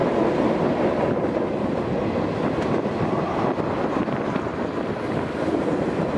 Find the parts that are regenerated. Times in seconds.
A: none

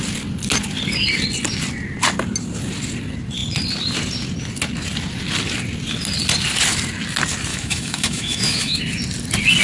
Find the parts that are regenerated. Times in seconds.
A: 7.5-8.8 (autoencoder, DAC-VAE)

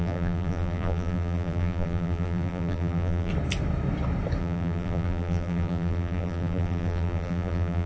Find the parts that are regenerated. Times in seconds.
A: 0.0-3.3 (vocoder, BigVGAN v2); 4.4-7.9

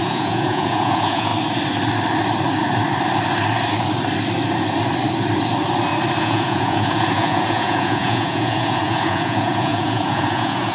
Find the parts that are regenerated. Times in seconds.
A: 0.0-1.3 (vocoder, Vocos); 6.2-10.7

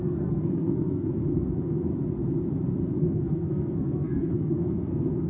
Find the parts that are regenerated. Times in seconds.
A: 0.0-1.9 (codec, SNAC); 3.0-5.3